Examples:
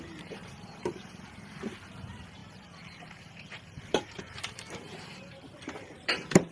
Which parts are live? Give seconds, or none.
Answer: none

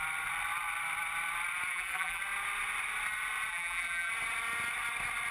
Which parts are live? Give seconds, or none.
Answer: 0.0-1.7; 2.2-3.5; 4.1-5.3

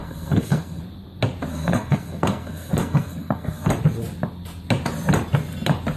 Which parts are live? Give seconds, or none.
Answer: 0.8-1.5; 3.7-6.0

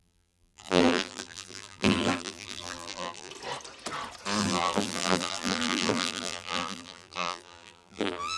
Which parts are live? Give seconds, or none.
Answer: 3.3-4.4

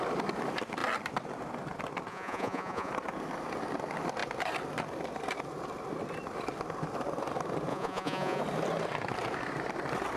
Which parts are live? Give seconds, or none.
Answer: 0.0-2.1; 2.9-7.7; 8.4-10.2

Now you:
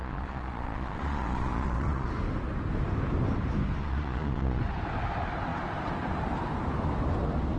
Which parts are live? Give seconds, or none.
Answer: 2.1-3.8; 4.6-7.6